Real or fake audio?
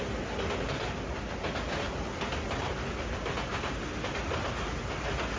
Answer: real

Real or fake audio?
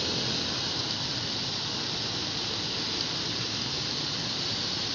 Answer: real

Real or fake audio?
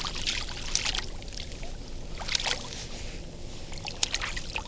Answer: real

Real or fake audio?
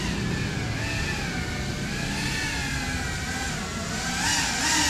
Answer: real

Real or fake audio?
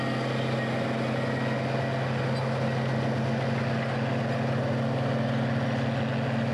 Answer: real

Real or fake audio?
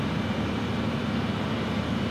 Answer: real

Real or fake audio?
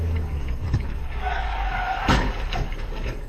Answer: fake